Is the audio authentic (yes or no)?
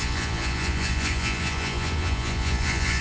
no